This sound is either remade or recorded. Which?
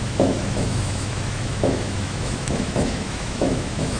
remade